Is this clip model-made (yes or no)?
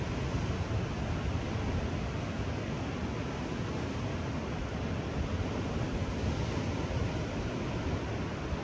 no